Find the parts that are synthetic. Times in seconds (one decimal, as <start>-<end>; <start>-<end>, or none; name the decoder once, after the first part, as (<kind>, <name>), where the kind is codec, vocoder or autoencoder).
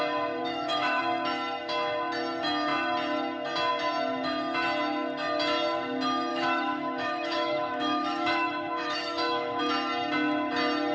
0.4-1.0 (autoencoder, DAC-VAE); 6.3-9.6